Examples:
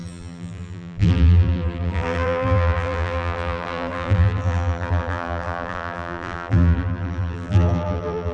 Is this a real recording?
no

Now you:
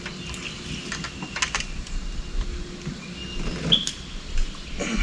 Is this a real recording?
yes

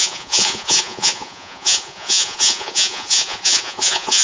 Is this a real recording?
no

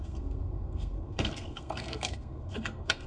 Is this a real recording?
no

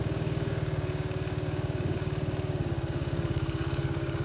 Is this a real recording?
no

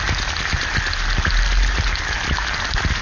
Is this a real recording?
yes